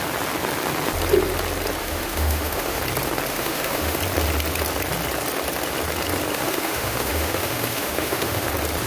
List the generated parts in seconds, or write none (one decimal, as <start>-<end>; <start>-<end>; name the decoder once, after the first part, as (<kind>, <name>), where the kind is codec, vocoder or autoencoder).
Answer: 1.8-2.8 (autoencoder, DAC-VAE); 3.3-4.0; 6.3-8.5

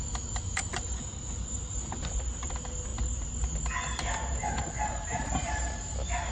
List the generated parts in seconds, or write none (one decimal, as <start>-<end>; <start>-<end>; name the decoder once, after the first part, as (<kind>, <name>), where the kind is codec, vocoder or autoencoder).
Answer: 0.0-2.9 (vocoder, BigVGAN v2); 4.9-6.3

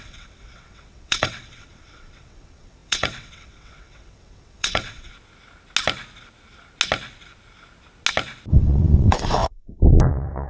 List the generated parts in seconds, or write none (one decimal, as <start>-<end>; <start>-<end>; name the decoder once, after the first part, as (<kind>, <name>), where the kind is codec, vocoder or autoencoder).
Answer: 0.0-5.1 (vocoder, WaveNeXt); 8.5-10.5

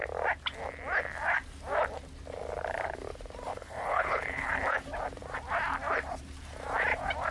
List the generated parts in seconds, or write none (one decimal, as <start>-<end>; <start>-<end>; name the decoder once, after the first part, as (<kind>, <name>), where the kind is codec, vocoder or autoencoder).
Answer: 3.5-4.5 (codec, HILCodec)

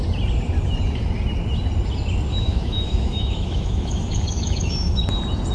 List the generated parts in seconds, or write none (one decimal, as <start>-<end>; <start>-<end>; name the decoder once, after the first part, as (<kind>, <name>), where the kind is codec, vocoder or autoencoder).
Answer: 2.3-5.0 (autoencoder, DAC-VAE)